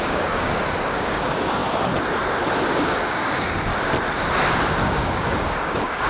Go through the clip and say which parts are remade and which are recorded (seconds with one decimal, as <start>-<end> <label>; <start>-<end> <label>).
0.0-1.6 remade; 1.6-2.7 recorded; 2.7-3.7 remade; 3.7-4.8 recorded; 4.8-6.1 remade